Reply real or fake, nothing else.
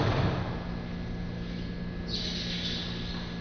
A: real